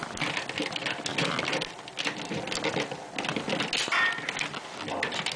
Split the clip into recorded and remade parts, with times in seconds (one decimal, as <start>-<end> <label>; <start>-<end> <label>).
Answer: 0.0-5.4 recorded